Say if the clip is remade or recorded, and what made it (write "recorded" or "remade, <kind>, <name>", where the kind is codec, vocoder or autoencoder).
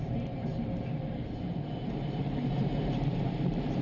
remade, vocoder, BigVGAN v2